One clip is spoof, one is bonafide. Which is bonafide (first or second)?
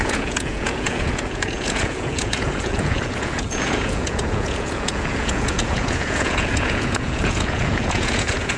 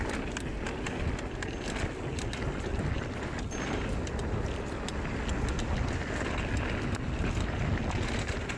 second